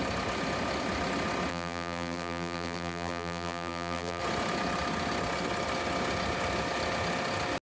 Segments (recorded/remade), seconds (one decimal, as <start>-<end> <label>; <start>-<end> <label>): 0.0-1.5 recorded; 1.5-4.2 remade; 4.2-7.7 recorded